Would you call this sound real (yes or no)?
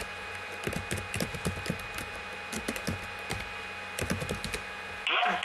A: yes